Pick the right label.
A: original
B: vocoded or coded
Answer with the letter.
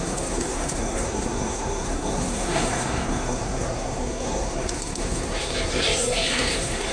B